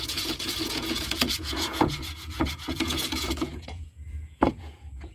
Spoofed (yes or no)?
yes